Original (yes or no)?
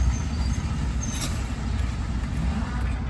yes